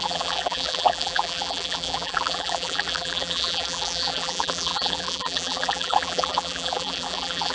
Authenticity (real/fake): fake